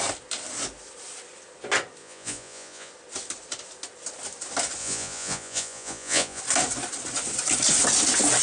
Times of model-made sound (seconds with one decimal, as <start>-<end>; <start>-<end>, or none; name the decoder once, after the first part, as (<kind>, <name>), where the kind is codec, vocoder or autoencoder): 2.0-2.9 (vocoder, Vocos); 4.8-6.4